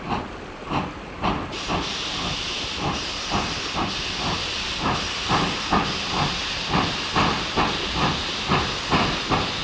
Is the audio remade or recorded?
recorded